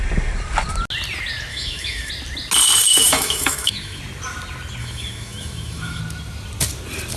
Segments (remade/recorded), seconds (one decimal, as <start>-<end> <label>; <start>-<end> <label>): 0.0-1.5 recorded; 1.5-2.1 remade; 2.1-2.8 recorded; 2.8-4.0 remade; 4.0-4.8 recorded; 4.8-6.0 remade; 6.0-7.2 recorded